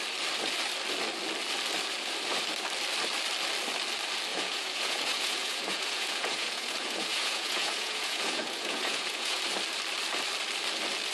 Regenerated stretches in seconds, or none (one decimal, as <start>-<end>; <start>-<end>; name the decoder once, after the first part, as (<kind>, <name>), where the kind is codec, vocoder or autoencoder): 4.3-9.4 (vocoder, Vocos)